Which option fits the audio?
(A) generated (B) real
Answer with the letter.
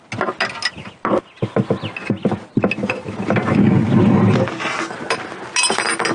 B